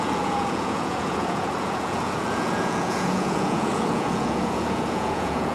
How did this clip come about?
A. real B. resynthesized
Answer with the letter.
B